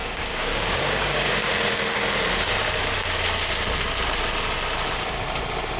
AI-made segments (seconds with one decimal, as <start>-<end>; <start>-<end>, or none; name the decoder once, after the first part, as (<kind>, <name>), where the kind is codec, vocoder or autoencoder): 0.0-1.5 (codec, DAC)